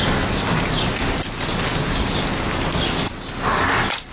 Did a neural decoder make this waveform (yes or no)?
no